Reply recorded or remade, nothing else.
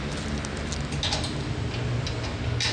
recorded